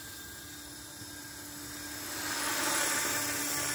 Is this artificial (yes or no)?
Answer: no